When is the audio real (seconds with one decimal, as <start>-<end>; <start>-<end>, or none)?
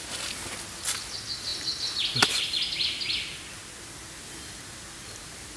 0.0-5.6